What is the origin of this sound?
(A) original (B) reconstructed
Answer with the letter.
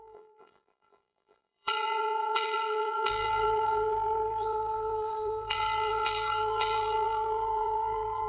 B